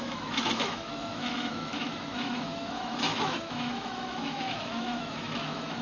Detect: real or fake fake